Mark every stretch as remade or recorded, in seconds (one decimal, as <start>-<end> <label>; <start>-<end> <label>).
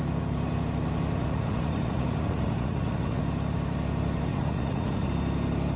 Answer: 0.0-1.2 recorded; 1.2-3.2 remade; 3.2-4.3 recorded; 4.3-5.1 remade; 5.1-5.8 recorded